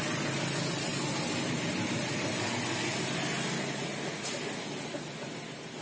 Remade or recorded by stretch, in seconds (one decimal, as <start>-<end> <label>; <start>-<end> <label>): 0.0-5.8 recorded